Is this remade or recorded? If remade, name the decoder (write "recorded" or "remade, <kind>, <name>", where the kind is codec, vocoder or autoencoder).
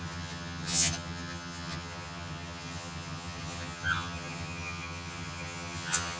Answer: remade, vocoder, HiFi-GAN